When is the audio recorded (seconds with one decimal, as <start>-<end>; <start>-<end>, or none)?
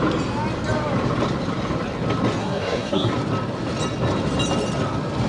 0.0-2.4; 3.1-5.3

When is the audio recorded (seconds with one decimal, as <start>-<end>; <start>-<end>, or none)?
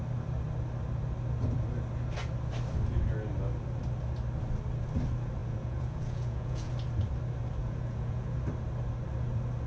0.0-5.4; 6.7-7.6; 8.4-9.7